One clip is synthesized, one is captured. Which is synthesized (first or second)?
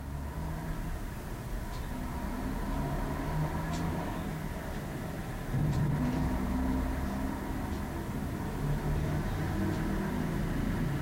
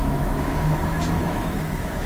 second